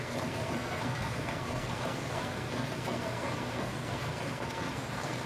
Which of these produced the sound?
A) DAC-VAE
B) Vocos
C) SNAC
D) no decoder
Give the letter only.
C